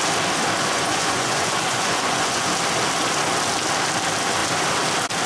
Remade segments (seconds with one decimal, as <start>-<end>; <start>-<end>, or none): 0.6-2.5